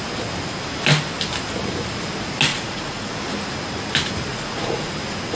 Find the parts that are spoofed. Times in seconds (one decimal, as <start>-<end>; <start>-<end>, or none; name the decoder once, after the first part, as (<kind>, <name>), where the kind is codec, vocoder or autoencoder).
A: 2.5-3.2 (vocoder, Vocos); 4.3-4.9